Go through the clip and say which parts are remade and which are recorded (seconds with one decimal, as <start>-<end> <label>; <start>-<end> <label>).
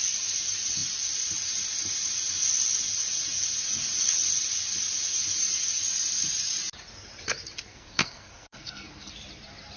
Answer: 0.0-7.7 recorded; 7.7-9.1 remade; 9.1-9.8 recorded